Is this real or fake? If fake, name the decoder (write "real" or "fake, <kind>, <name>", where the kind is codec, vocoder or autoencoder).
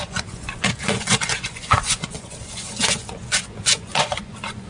fake, vocoder, Vocos